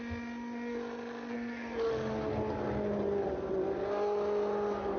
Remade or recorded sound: recorded